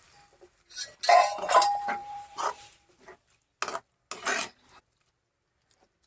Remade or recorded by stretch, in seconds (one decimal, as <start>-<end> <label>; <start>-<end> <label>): 0.0-2.0 recorded; 2.0-2.9 remade; 2.9-6.1 recorded

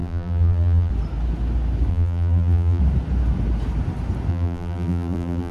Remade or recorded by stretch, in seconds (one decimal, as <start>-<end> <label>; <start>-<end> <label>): 0.0-0.9 remade; 0.9-1.9 recorded; 1.9-2.8 remade; 2.8-4.3 recorded; 4.3-5.5 remade